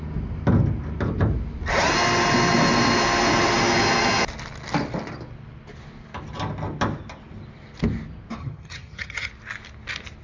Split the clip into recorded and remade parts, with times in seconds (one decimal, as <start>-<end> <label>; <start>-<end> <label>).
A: 0.0-8.4 recorded; 8.4-9.3 remade; 9.3-10.2 recorded